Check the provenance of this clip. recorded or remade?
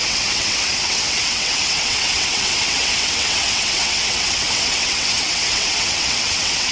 remade